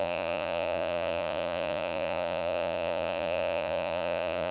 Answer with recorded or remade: remade